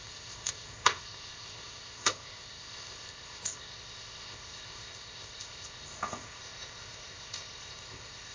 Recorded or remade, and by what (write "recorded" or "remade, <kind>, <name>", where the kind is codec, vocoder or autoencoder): remade, codec, ZipCodec